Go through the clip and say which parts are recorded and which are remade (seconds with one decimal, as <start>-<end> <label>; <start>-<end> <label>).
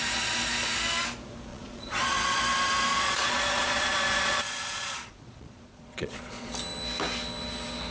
0.0-1.5 recorded; 1.5-2.4 remade; 2.4-2.9 recorded; 2.9-6.5 remade; 6.5-7.9 recorded